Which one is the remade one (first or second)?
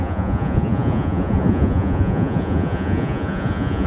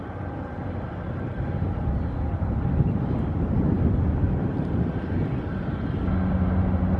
first